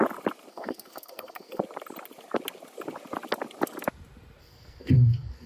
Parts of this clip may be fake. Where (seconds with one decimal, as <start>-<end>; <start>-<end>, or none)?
0.5-1.6; 4.4-5.5